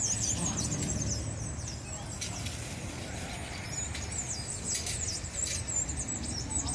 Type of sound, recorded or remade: recorded